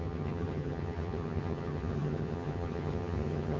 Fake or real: fake